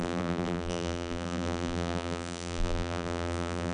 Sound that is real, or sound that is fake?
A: fake